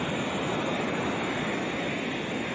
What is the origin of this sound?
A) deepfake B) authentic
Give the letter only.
B